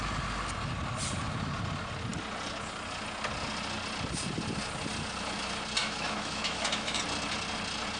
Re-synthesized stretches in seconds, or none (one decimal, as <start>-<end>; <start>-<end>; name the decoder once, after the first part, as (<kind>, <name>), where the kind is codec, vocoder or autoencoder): 5.8-7.0 (autoencoder, DAC-VAE)